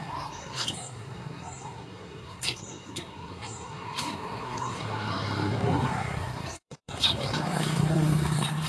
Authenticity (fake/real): fake